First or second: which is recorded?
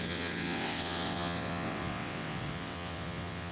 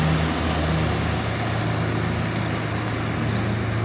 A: second